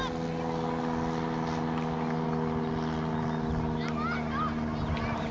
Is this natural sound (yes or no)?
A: yes